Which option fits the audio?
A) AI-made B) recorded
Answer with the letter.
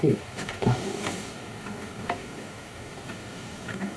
A